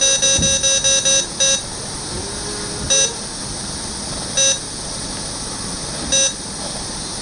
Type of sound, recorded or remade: recorded